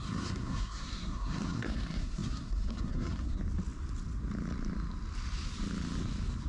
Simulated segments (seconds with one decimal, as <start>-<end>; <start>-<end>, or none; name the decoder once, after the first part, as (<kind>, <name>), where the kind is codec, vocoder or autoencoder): 0.0-3.4 (codec, SNAC)